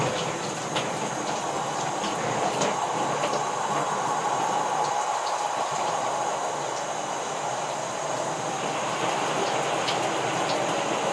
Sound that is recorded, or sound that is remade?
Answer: recorded